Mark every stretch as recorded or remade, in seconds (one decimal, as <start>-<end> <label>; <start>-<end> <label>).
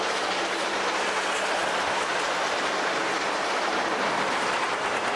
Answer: 0.0-5.2 recorded